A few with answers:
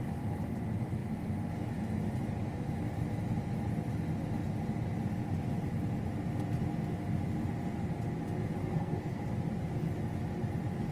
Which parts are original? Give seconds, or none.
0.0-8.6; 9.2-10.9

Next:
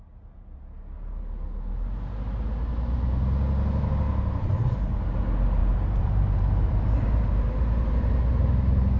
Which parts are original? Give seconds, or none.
0.0-5.6; 8.1-9.0

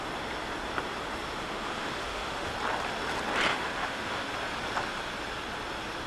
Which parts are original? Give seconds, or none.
0.0-1.4; 2.5-3.5; 4.3-6.1

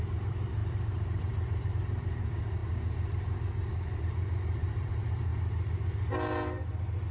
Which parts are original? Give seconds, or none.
2.6-3.7; 5.3-7.1